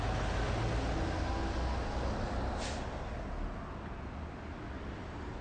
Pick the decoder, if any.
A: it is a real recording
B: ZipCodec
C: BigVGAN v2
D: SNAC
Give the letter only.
A